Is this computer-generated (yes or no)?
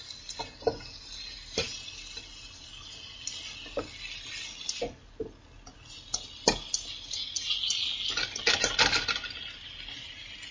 no